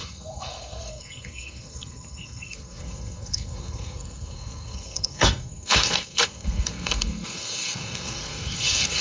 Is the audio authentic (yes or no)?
no